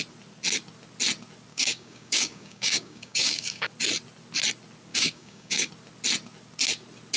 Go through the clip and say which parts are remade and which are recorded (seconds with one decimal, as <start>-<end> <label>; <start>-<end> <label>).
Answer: 0.0-1.5 recorded; 1.5-3.7 remade; 3.7-4.9 recorded; 4.9-5.7 remade; 5.7-7.2 recorded